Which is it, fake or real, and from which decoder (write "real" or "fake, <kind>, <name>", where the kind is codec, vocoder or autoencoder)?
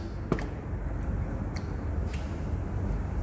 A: real